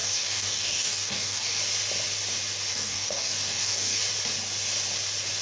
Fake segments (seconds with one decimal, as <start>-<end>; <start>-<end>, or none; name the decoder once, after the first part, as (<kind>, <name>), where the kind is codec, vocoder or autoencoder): 0.0-1.6 (codec, DAC); 2.7-4.0